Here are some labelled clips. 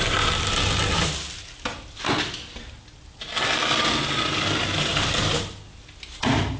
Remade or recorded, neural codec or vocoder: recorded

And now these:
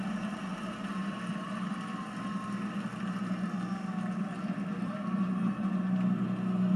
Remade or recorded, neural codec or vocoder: recorded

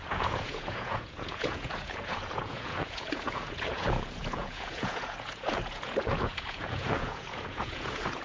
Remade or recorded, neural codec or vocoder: remade, vocoder, Vocos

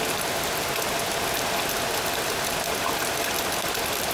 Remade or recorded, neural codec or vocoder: recorded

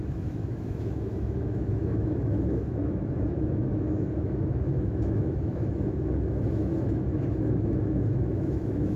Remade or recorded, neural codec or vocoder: remade, autoencoder, DAC-VAE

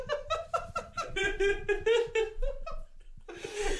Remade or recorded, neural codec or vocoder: recorded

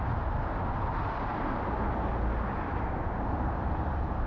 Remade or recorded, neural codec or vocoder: recorded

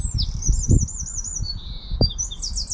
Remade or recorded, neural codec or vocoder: recorded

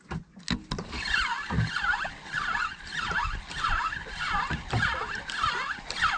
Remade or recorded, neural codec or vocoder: recorded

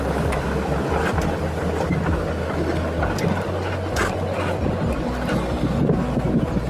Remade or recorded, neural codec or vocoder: recorded